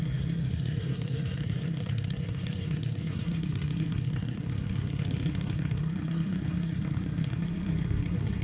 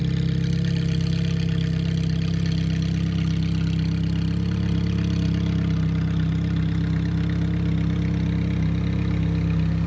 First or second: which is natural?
second